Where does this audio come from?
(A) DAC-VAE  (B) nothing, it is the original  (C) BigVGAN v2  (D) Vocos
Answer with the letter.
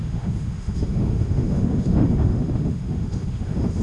A